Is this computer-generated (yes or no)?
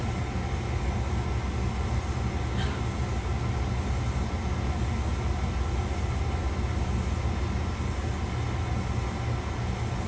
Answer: no